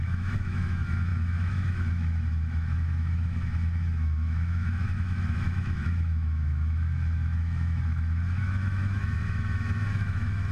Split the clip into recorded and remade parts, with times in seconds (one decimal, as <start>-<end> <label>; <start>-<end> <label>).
0.0-10.5 remade